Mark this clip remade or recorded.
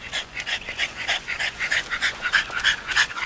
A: remade